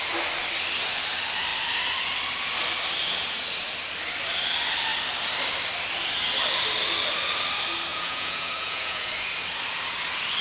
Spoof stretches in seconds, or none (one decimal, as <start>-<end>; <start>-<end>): 7.9-9.1